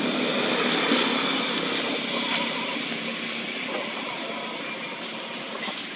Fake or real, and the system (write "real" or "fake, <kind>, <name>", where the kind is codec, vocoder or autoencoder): real